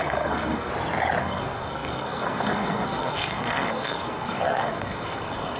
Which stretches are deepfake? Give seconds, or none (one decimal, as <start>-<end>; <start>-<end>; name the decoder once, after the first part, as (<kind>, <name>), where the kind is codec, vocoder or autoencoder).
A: 0.0-0.7 (codec, SNAC); 1.2-5.6